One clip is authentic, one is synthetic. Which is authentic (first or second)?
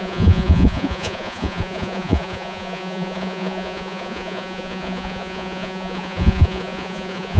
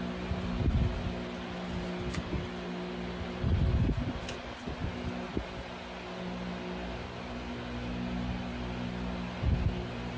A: second